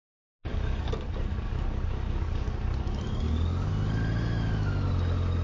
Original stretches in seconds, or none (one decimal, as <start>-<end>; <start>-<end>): 0.0-0.5; 3.7-5.4